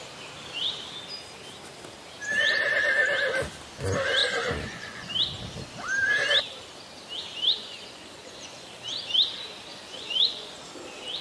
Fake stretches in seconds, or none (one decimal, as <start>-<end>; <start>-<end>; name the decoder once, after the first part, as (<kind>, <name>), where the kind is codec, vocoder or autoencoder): 4.2-5.1 (vocoder, Vocos); 7.6-8.7; 9.7-10.6